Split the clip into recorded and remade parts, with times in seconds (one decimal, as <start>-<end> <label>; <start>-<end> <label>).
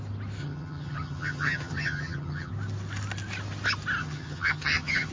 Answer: 0.0-0.4 recorded; 0.4-2.5 remade; 2.5-4.0 recorded; 4.0-5.1 remade